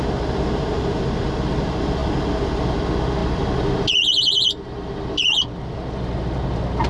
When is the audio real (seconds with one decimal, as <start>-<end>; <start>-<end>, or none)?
0.0-6.9